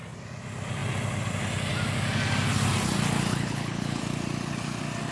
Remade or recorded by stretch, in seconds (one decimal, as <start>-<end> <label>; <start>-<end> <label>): 0.0-3.3 recorded; 3.3-4.0 remade; 4.0-5.1 recorded